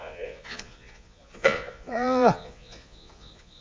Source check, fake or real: fake